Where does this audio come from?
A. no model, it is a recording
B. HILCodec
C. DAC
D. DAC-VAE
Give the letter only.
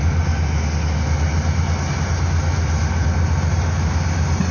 A